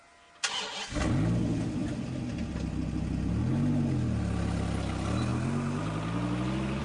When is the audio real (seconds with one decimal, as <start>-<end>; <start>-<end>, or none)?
0.0-6.8